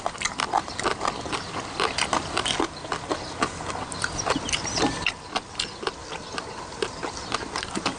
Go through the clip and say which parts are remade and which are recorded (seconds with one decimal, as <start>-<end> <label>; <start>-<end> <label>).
0.0-8.0 recorded